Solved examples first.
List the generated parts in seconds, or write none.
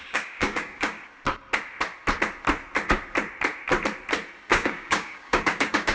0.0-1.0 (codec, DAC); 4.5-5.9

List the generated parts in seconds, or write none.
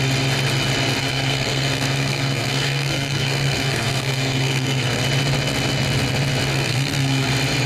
1.0-5.0 (codec, SNAC); 6.5-7.3